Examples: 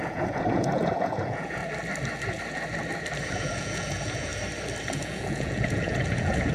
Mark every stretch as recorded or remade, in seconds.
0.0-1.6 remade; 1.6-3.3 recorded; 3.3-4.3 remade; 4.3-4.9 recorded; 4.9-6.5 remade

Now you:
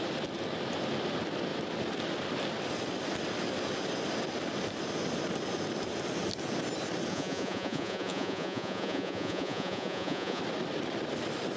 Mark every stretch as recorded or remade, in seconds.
0.0-7.1 recorded; 7.1-10.4 remade; 10.4-11.6 recorded

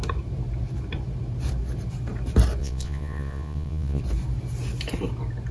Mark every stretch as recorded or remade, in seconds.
0.0-2.6 recorded; 2.6-4.0 remade; 4.0-5.5 recorded